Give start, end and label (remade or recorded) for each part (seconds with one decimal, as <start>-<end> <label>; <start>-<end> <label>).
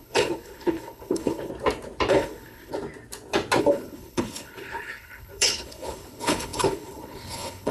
0.0-1.5 remade; 1.5-2.1 recorded; 2.1-2.7 remade; 2.7-3.6 recorded; 3.6-7.7 remade